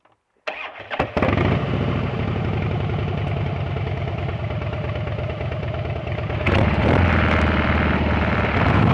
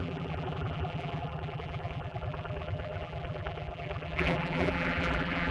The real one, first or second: first